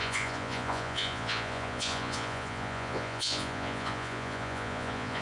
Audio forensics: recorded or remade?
remade